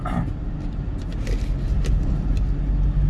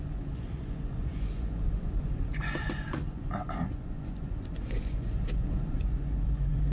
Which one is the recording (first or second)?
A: first